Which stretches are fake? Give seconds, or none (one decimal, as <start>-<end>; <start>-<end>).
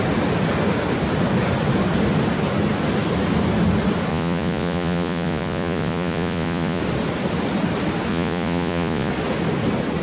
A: 4.1-6.8; 8.1-9.1